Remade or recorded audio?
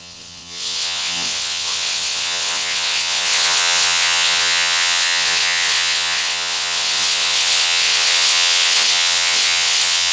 remade